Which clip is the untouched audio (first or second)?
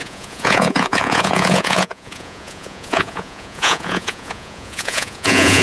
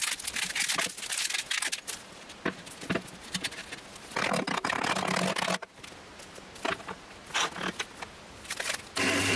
second